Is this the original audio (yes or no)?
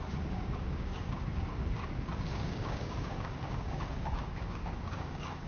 no